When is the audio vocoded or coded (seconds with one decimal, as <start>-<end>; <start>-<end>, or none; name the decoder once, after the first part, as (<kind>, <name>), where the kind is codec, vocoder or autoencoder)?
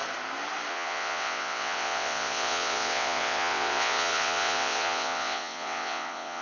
0.7-6.4 (vocoder, WaveNeXt)